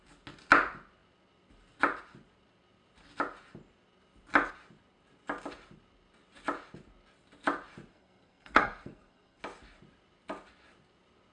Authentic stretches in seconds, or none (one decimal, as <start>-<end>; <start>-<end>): 0.0-7.9; 9.4-11.3

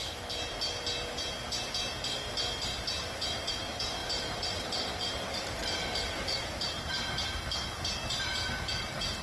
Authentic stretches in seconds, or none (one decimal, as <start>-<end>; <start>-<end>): 0.0-3.0; 3.5-4.0

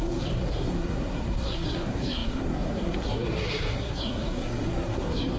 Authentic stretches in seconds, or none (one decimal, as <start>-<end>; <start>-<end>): none

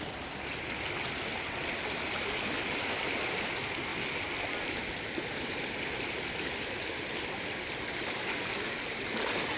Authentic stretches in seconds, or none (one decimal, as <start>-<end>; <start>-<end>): 0.0-9.6

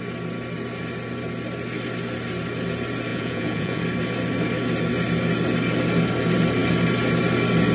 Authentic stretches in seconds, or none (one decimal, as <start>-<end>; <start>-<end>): 0.0-3.1; 3.8-7.7

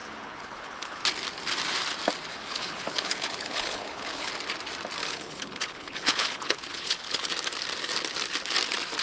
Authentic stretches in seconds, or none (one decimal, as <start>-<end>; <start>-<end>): 1.0-2.3; 4.3-5.0; 7.3-9.0

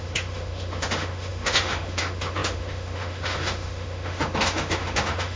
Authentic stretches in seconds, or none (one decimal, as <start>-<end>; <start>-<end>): none

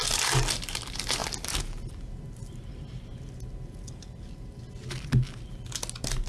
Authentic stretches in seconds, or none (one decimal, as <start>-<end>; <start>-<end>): 0.0-6.3